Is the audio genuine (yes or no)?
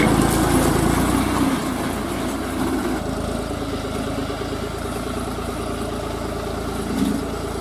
yes